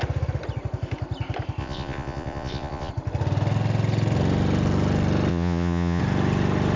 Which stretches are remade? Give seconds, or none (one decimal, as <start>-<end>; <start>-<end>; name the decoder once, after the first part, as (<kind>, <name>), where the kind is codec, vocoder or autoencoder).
1.6-2.9 (vocoder, Vocos); 5.3-6.0